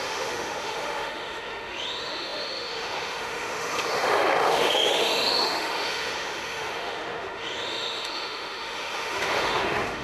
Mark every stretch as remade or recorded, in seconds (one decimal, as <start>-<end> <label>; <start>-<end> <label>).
0.0-10.0 remade